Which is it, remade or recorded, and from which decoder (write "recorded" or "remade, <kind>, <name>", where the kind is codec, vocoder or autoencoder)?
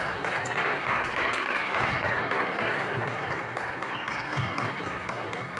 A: remade, codec, SNAC